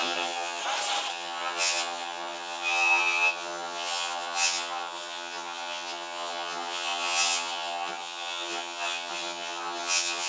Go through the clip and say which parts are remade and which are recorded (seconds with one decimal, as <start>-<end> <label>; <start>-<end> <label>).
0.0-0.6 remade; 0.6-1.1 recorded; 1.1-10.3 remade